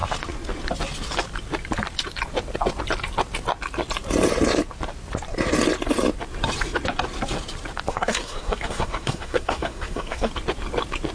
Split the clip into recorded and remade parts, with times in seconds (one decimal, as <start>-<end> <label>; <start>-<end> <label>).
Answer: 0.0-7.9 recorded; 7.9-10.3 remade; 10.3-11.1 recorded